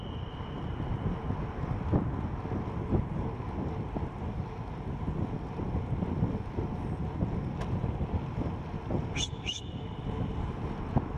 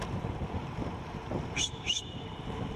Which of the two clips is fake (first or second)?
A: second